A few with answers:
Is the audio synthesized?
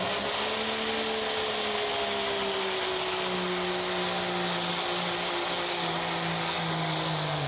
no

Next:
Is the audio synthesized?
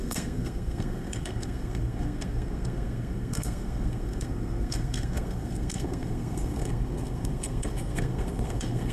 yes